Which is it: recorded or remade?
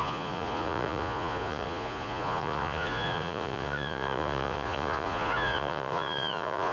remade